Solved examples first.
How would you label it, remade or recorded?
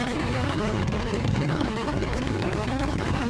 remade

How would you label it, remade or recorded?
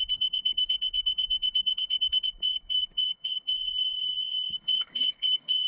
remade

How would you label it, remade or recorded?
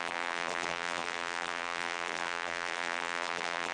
remade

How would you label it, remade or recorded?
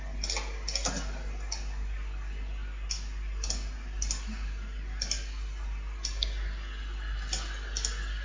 recorded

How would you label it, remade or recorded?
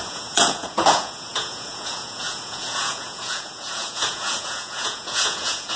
remade